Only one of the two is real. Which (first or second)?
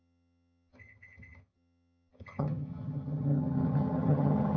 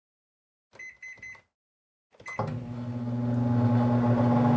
second